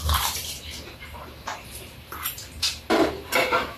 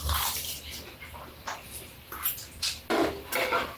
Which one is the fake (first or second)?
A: first